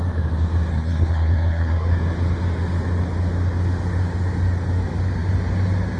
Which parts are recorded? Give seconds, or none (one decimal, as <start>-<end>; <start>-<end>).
0.0-0.7; 1.9-6.0